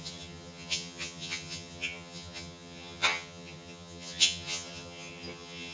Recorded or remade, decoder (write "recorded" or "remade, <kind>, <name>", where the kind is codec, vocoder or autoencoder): remade, vocoder, HiFi-GAN